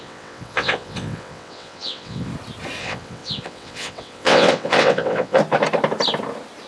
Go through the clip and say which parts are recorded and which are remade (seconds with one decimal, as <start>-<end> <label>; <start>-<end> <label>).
0.0-2.3 remade; 2.3-2.8 recorded; 2.8-5.4 remade; 5.4-6.7 recorded